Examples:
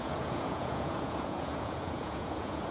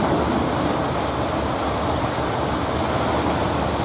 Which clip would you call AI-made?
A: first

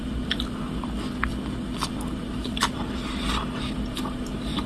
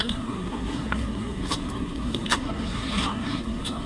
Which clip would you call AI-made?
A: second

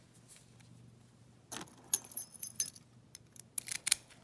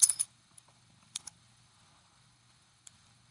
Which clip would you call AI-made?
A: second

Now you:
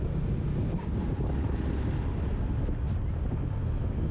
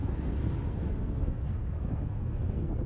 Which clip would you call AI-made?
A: second